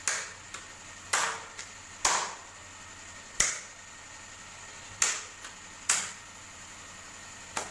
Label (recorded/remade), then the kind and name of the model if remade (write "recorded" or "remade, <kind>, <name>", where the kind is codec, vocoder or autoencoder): recorded